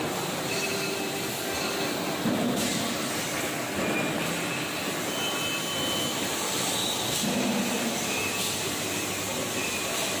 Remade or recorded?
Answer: recorded